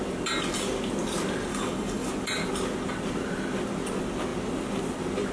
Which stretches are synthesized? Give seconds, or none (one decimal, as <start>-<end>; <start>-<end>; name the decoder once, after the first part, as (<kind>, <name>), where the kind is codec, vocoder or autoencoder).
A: 1.5-2.1 (codec, DAC)

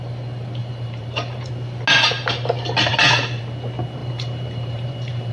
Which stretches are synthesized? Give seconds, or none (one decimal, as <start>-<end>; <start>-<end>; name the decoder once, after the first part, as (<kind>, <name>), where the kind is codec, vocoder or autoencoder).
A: 0.6-1.5 (vocoder, BigVGAN v2); 2.9-3.4; 4.0-5.3

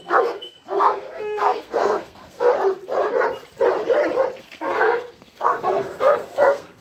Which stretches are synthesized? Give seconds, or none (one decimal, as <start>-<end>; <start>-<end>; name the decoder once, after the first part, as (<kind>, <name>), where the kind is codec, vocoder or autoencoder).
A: 0.0-2.5 (codec, SNAC); 4.4-6.8

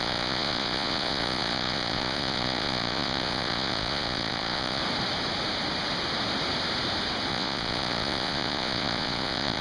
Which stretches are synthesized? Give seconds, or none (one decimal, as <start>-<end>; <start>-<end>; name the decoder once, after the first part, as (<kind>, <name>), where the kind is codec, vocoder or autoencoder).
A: 0.0-4.8 (vocoder, Vocos); 7.3-9.6

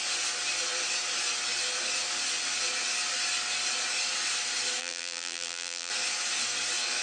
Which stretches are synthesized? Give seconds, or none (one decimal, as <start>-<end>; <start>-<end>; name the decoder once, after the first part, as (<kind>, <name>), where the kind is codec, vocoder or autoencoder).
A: 4.8-5.9 (vocoder, BigVGAN v2)

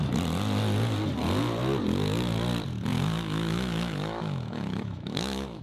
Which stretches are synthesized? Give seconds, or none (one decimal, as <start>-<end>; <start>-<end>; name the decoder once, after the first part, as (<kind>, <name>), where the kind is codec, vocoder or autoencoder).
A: 2.9-5.6 (autoencoder, DAC-VAE)